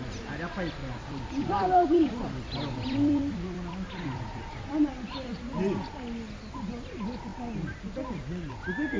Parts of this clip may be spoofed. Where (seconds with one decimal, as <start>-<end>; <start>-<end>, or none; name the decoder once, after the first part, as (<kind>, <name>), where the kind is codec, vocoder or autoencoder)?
0.8-5.4 (vocoder, BigVGAN v2)